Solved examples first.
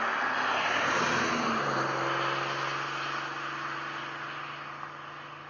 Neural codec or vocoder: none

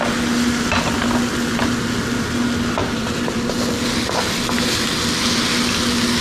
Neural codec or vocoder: none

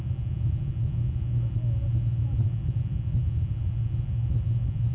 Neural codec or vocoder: none